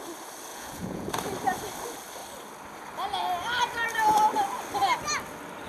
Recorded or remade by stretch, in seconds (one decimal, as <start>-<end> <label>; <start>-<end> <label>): 0.0-0.5 recorded; 0.5-1.1 remade; 1.1-5.7 recorded